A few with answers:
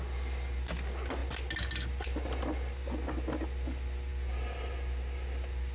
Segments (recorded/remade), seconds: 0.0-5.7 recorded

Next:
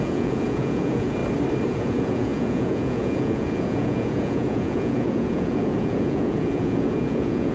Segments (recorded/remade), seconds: 0.0-1.2 remade; 1.2-1.7 recorded; 1.7-7.5 remade

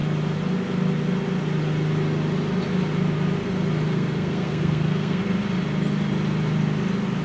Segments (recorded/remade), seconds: 0.0-3.9 recorded; 3.9-5.2 remade; 5.2-7.2 recorded